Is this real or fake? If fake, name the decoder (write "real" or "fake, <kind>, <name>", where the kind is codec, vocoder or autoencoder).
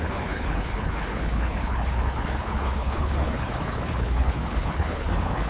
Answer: fake, codec, HILCodec